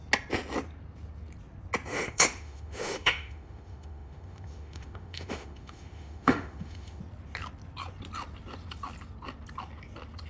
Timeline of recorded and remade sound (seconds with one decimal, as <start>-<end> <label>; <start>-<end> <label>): 0.0-1.9 recorded; 1.9-7.0 remade; 7.0-10.3 recorded